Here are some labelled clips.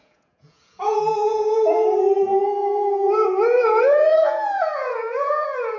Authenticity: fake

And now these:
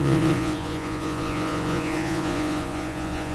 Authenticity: fake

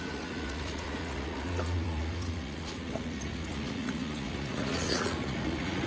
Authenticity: fake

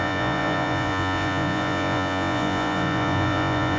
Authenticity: fake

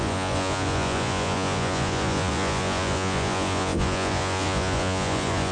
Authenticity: fake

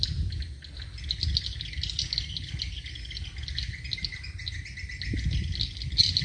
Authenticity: real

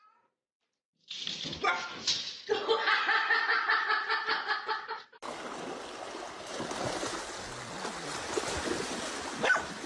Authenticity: real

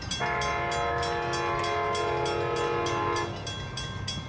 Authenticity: real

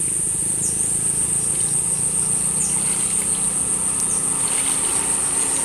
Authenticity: real